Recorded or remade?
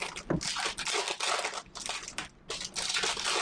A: recorded